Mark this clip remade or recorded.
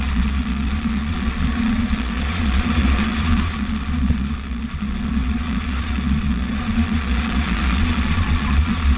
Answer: remade